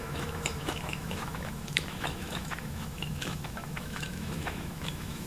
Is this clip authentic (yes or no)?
no